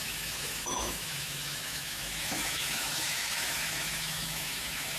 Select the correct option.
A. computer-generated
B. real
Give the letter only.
A